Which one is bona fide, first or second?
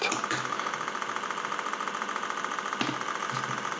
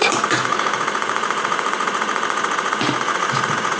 first